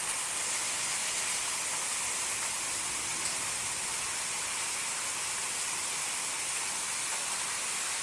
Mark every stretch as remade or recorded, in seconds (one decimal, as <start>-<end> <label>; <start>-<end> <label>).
0.0-8.0 recorded